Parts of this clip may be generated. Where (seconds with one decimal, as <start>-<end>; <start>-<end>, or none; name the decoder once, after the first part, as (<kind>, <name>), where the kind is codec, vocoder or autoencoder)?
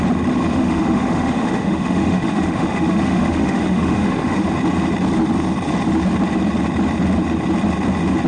0.5-4.5 (autoencoder, DAC-VAE)